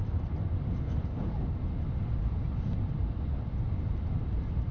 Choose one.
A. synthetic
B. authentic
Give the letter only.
A